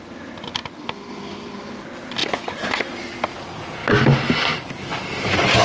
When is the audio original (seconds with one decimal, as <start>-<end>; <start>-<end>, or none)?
0.6-1.1; 3.8-4.3; 4.9-5.6